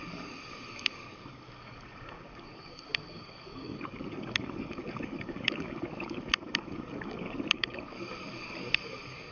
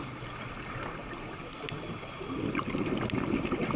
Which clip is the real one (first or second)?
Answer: second